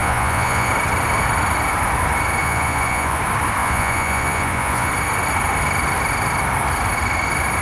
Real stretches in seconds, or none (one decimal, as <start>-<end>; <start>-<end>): 0.7-2.4; 3.2-3.6; 4.9-7.6